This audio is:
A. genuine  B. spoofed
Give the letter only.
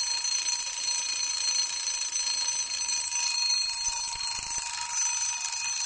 A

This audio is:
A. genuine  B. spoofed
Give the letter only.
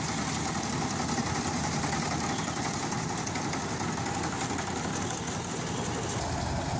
A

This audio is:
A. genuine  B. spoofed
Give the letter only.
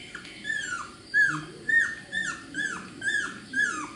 A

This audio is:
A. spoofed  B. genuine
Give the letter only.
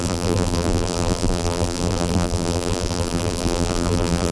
A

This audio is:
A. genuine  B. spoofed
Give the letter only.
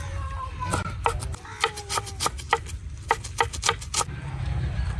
B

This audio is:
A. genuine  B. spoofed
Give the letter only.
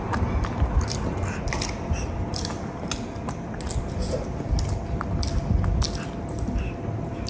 A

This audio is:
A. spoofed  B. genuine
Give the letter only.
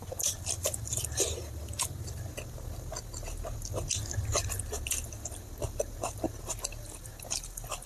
B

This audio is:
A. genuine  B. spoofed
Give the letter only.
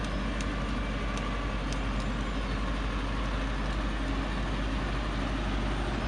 A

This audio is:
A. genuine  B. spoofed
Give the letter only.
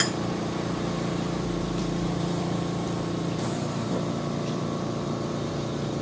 B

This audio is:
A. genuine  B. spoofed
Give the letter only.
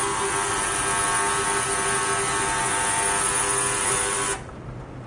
A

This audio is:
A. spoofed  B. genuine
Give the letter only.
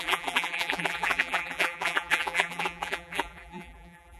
A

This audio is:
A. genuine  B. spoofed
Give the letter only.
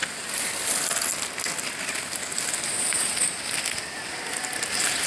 A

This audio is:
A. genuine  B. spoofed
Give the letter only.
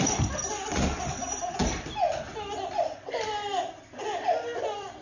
B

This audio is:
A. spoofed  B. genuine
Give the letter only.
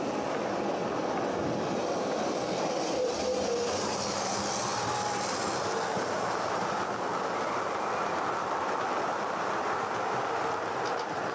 B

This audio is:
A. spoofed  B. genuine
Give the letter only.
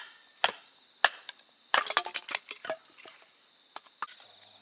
B